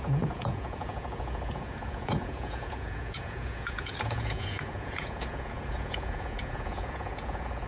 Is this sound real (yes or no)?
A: no